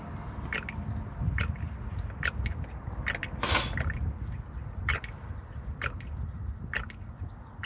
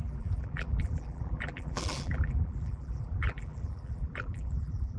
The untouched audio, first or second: first